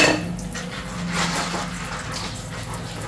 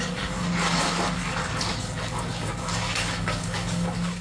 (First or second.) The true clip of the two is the first